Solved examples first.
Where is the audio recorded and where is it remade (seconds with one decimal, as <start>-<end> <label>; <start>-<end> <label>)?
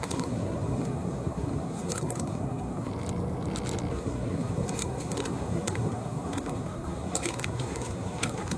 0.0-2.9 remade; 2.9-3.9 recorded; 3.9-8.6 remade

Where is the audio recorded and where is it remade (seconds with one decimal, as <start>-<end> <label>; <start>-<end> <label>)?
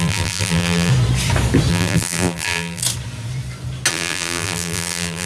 0.0-0.9 remade; 0.9-1.7 recorded; 1.7-2.8 remade; 2.8-3.9 recorded; 3.9-5.3 remade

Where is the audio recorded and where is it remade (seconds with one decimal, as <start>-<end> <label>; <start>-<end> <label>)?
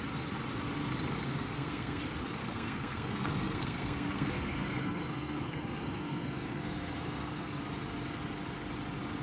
0.0-1.3 recorded; 1.3-2.0 remade; 2.0-2.4 recorded; 2.4-7.6 remade; 7.6-9.2 recorded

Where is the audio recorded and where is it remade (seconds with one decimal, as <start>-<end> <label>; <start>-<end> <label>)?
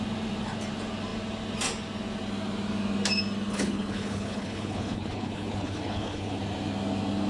0.0-3.5 recorded; 3.5-6.4 remade; 6.4-7.3 recorded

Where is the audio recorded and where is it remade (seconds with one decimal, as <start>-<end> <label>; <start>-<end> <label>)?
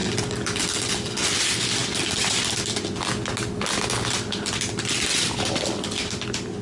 0.0-6.6 recorded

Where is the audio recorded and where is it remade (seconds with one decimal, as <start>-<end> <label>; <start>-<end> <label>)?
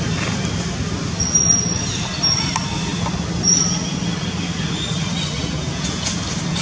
0.0-5.4 recorded; 5.4-6.1 remade; 6.1-6.6 recorded